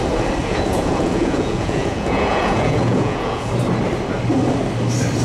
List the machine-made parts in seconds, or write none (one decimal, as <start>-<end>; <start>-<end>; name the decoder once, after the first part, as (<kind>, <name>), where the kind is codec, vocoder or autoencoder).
0.4-3.5 (vocoder, Vocos)